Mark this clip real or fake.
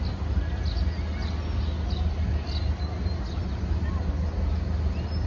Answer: real